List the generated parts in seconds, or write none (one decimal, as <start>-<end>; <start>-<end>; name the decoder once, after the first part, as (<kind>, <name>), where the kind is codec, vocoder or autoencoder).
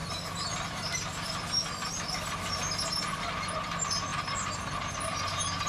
0.0-1.4 (vocoder, BigVGAN v2); 4.1-5.2